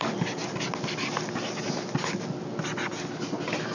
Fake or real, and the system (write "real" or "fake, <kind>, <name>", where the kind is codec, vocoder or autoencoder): real